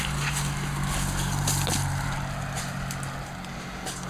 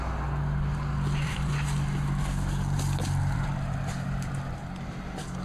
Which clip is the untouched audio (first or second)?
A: first